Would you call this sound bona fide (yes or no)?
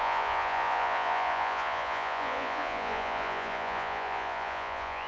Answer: no